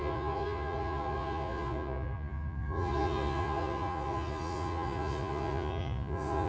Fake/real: fake